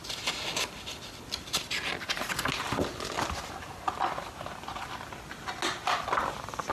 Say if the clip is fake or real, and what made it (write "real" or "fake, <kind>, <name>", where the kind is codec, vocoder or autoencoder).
real